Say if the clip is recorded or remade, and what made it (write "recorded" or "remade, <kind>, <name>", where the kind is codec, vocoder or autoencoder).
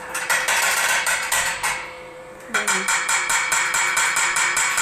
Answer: remade, vocoder, BigVGAN v2